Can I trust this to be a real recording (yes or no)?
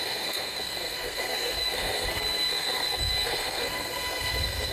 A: no